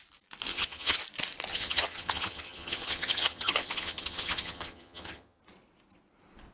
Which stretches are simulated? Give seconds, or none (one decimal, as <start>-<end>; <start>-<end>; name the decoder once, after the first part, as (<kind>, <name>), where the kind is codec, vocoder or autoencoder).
0.5-1.0 (vocoder, HiFi-GAN); 1.5-5.4